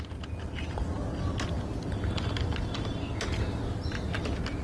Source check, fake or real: real